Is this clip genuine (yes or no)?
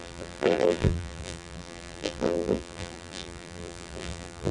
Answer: no